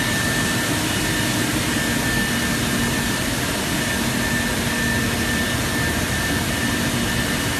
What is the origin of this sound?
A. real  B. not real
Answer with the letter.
A